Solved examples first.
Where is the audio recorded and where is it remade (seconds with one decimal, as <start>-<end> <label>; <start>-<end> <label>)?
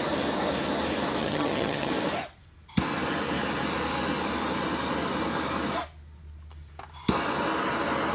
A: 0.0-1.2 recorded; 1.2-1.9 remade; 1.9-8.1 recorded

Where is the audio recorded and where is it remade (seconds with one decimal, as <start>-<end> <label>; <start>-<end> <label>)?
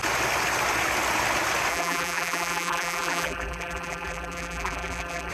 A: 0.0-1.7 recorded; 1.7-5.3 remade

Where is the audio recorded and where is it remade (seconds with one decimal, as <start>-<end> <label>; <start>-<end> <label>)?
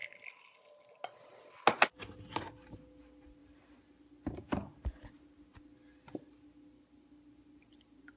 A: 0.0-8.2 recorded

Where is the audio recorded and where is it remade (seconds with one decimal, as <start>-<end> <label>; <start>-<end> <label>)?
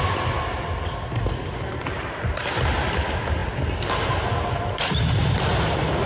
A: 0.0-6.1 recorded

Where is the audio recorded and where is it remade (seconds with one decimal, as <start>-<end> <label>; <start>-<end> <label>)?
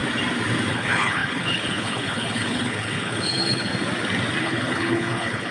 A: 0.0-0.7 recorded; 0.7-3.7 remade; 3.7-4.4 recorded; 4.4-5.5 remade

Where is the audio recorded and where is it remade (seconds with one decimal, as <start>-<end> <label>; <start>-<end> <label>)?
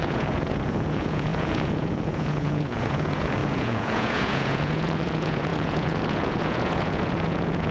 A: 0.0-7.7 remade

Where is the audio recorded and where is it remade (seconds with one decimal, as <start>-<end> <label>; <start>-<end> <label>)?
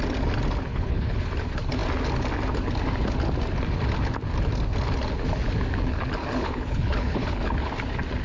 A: 0.0-0.7 recorded; 0.7-1.3 remade; 1.3-6.2 recorded; 6.2-7.4 remade; 7.4-8.2 recorded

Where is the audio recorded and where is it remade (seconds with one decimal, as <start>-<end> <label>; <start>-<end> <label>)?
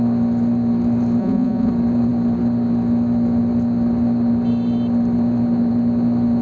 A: 0.0-1.2 recorded; 1.2-1.7 remade; 1.7-6.4 recorded